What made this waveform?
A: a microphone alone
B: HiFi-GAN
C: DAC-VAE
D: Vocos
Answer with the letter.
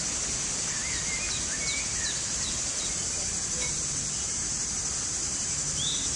A